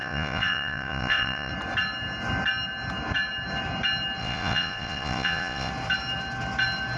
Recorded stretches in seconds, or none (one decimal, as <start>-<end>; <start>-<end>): 1.5-4.2; 5.7-7.0